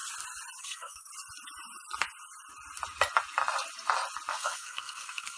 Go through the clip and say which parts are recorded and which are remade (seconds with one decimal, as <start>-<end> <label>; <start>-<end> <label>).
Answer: 0.0-0.6 recorded; 0.6-1.1 remade; 1.1-4.3 recorded; 4.3-5.4 remade